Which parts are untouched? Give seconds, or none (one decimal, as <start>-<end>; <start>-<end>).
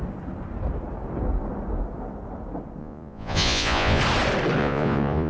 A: 0.0-2.8; 4.0-4.6